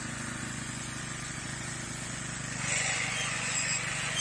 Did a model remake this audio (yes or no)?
yes